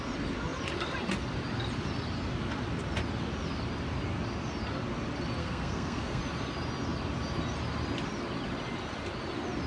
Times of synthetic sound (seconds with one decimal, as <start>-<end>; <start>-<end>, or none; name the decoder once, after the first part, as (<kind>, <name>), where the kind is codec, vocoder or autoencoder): 5.4-6.2 (codec, SNAC)